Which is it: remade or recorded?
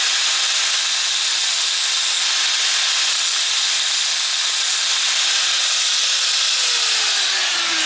recorded